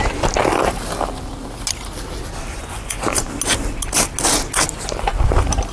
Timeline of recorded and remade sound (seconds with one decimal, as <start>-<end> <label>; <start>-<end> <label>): 0.0-2.5 recorded; 2.5-3.3 remade; 3.3-5.7 recorded